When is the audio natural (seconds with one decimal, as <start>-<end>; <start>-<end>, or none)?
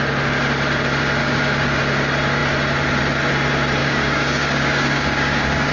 0.0-1.2; 1.8-3.8